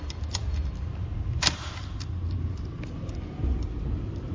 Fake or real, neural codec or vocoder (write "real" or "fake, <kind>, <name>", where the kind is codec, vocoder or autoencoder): real